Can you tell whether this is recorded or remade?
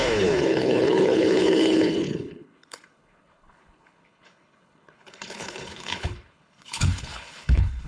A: remade